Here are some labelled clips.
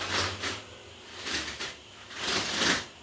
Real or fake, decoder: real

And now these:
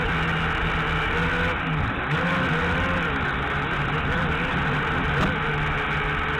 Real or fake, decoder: real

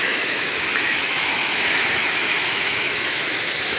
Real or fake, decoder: fake, autoencoder, DAC-VAE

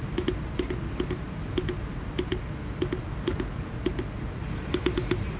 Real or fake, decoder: real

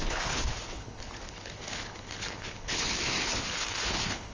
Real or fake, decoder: fake, codec, HILCodec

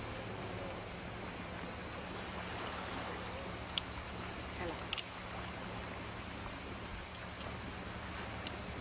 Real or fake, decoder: real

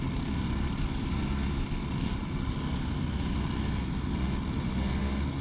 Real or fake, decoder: real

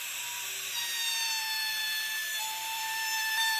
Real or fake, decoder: fake, vocoder, BigVGAN v2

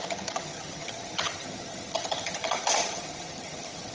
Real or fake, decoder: fake, vocoder, HiFi-GAN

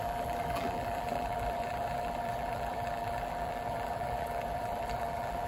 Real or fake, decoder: fake, vocoder, BigVGAN v2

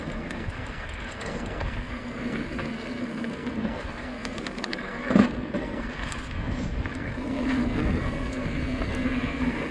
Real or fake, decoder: fake, codec, SNAC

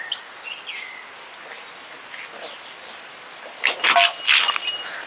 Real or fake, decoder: real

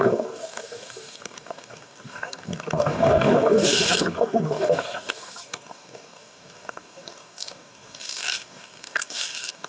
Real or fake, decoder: fake, codec, DAC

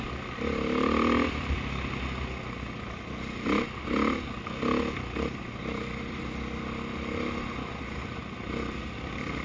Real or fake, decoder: real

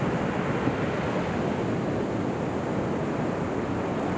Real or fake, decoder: real